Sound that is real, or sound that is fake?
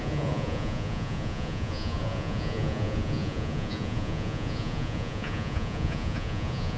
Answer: fake